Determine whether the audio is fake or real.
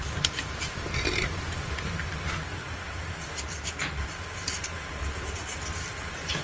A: real